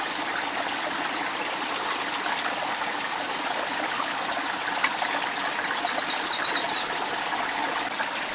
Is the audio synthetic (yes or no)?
no